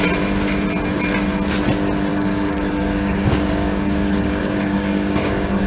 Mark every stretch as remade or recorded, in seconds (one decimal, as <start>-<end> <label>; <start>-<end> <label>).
0.0-2.1 recorded; 2.1-5.7 remade